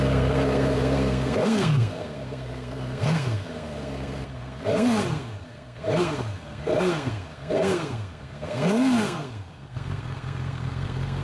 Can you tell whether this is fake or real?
fake